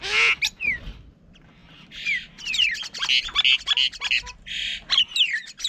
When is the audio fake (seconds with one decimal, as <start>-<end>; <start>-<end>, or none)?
none